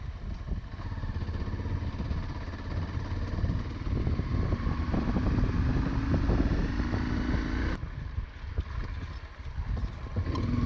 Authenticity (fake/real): real